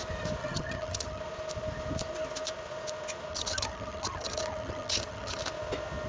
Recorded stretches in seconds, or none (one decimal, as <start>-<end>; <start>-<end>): 0.0-0.4; 1.2-3.3; 5.4-6.1